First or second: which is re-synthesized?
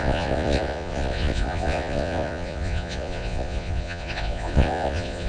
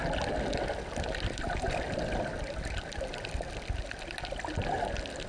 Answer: first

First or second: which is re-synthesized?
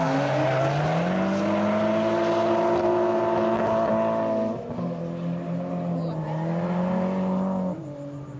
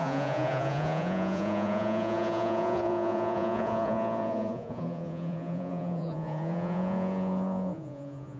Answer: second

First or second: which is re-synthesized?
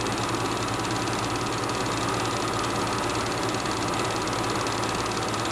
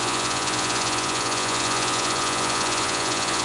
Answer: second